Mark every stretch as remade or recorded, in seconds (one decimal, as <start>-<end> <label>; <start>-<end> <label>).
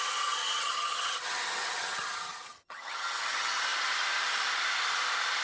0.0-0.4 recorded; 0.4-3.6 remade; 3.6-5.4 recorded